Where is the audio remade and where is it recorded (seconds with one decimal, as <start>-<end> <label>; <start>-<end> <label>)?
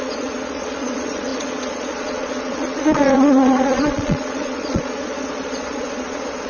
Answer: 0.0-6.5 remade